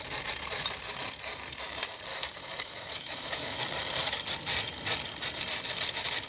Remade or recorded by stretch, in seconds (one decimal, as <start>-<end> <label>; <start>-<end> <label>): 0.0-2.1 recorded; 2.1-3.6 remade; 3.6-6.3 recorded